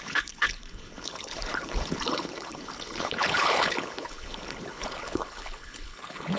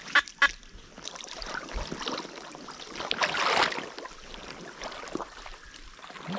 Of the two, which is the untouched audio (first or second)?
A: second